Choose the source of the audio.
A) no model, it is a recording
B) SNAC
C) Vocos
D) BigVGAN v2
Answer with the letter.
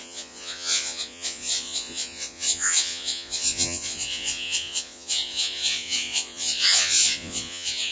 C